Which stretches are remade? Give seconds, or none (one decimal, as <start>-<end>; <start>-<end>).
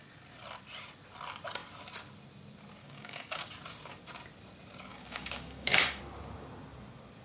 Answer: 2.8-3.5; 4.9-6.0